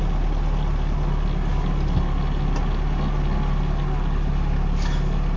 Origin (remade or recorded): recorded